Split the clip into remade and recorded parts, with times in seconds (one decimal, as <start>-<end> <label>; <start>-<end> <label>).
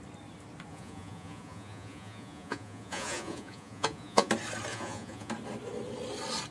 0.0-0.7 recorded; 0.7-4.3 remade; 4.3-4.7 recorded; 4.7-5.3 remade; 5.3-6.5 recorded